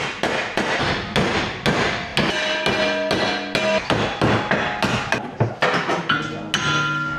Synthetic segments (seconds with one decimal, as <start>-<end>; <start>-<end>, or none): none